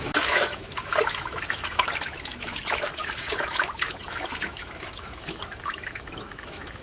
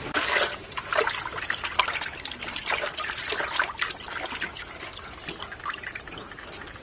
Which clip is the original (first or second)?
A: second